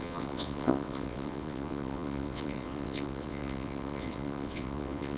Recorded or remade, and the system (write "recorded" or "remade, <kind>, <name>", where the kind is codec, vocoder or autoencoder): remade, vocoder, WaveNeXt